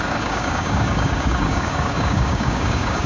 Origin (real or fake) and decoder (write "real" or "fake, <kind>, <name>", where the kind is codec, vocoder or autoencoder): fake, codec, DAC